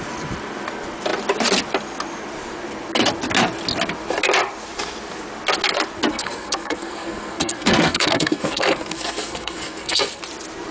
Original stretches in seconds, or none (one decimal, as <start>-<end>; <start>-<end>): 0.0-6.1; 10.2-10.7